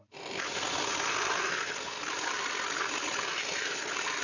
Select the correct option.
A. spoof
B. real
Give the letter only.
B